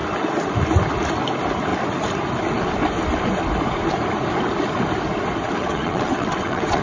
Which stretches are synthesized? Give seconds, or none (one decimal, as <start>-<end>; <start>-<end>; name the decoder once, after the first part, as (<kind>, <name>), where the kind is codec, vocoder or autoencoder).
5.6-6.8 (vocoder, WaveNeXt)